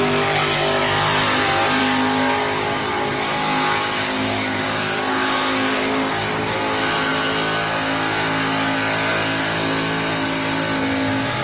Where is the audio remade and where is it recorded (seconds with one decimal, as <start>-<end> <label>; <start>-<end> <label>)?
0.0-4.1 recorded; 4.1-6.4 remade; 6.4-11.4 recorded